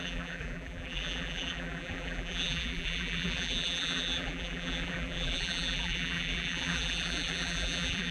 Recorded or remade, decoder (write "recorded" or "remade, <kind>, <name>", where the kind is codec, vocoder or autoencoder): remade, vocoder, BigVGAN v2